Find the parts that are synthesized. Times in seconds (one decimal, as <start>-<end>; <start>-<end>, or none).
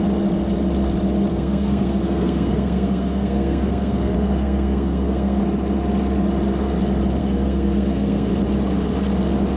1.3-5.4; 7.2-8.3